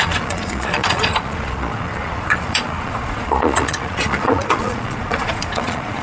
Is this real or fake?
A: fake